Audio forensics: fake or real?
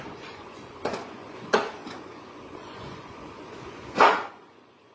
fake